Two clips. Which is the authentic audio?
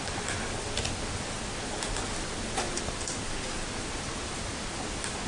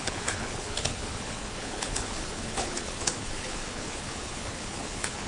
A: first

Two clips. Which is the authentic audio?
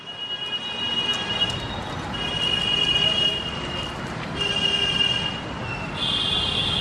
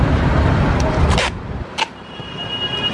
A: first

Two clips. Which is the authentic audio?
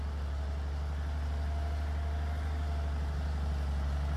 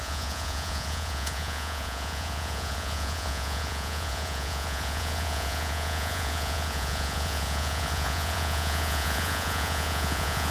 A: first